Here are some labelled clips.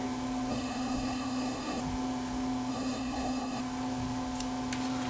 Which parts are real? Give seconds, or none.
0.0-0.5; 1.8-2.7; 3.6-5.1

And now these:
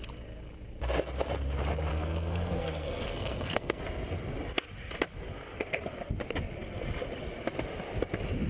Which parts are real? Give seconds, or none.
0.0-1.9; 3.8-8.5

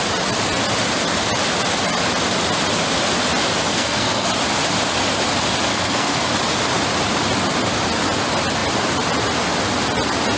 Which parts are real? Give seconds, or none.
0.0-3.7; 4.3-5.7; 6.2-10.4

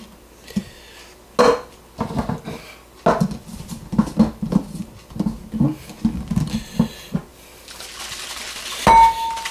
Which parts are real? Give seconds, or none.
0.0-9.5

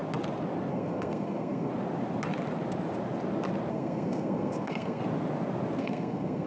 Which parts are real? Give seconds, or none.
0.0-0.7; 1.7-3.7; 5.0-5.8

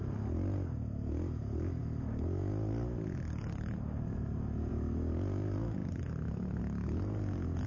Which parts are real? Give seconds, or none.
0.0-7.7